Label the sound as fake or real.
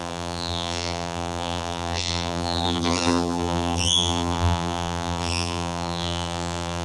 fake